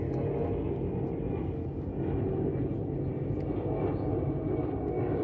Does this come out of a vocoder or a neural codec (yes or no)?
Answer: no